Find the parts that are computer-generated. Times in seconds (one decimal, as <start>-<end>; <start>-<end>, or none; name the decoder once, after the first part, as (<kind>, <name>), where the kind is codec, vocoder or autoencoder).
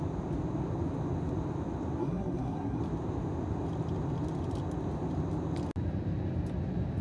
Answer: 2.0-2.8 (codec, SNAC)